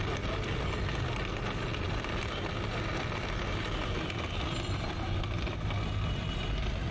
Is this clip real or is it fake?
real